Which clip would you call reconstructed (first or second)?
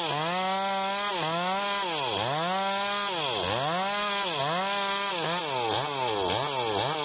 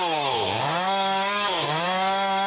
second